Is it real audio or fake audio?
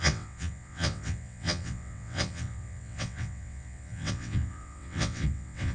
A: fake